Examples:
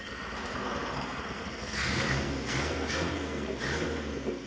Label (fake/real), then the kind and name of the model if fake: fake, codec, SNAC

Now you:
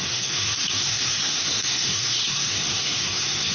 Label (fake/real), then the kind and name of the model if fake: fake, codec, SNAC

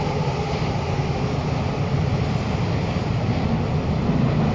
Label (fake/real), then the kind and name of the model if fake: real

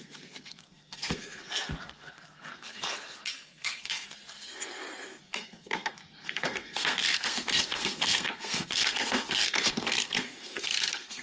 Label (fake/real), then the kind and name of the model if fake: fake, codec, SNAC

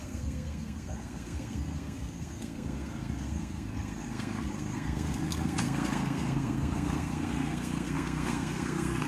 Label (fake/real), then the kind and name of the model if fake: fake, codec, SNAC